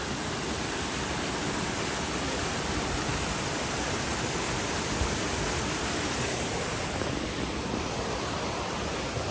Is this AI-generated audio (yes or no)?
yes